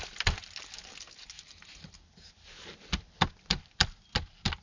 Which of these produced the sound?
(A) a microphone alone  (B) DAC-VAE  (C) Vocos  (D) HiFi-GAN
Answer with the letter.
A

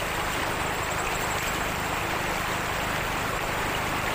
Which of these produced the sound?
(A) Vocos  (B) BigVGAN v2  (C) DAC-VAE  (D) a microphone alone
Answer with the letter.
B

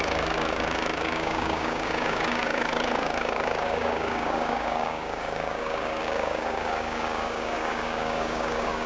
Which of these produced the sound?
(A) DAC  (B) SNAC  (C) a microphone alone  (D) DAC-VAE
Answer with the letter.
A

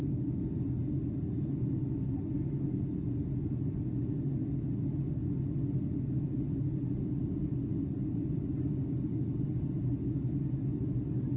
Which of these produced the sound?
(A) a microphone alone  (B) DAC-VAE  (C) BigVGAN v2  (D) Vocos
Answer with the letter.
A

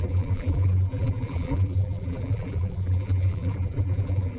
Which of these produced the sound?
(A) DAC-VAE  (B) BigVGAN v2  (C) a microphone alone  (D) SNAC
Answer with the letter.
B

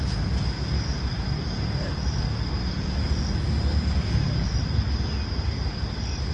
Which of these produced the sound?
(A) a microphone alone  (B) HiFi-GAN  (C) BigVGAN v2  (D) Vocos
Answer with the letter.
A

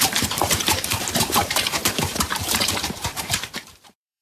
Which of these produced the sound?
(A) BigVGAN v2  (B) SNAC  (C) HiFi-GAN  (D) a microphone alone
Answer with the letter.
A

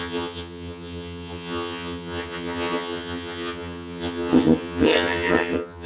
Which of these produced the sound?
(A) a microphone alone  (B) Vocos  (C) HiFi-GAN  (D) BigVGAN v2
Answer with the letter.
C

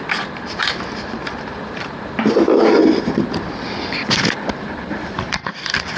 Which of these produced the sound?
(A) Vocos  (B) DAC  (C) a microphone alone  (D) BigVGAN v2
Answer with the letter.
D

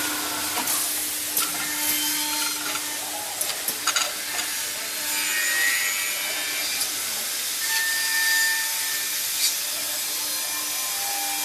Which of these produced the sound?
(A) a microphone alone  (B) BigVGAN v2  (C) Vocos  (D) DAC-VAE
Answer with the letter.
A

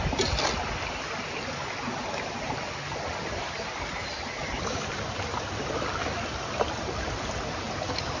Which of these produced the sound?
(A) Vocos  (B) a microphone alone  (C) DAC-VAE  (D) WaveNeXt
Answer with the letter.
B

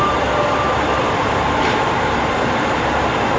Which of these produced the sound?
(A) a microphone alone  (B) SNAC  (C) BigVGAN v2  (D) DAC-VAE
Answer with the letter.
C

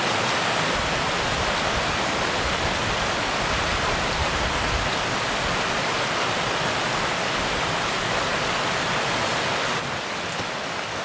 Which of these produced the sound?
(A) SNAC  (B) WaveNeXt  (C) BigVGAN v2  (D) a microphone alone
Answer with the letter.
D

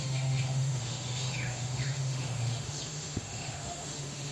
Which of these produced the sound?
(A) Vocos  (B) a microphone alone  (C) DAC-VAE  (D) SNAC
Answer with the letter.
C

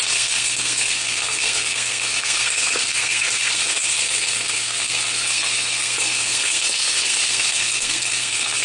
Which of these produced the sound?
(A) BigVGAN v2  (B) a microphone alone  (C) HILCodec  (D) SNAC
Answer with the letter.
D